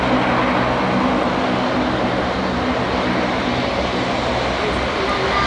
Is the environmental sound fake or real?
real